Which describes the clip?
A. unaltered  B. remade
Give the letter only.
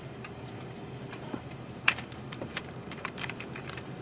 B